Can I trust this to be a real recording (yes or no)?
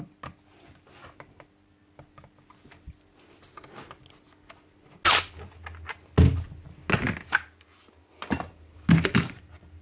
yes